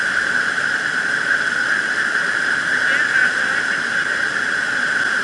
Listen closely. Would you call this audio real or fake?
real